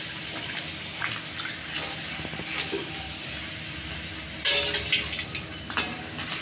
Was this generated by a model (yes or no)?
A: no